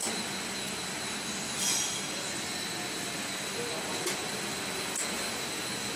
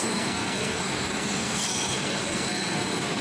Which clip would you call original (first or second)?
first